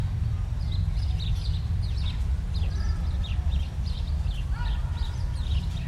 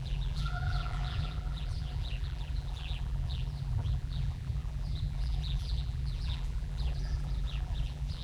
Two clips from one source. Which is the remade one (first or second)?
second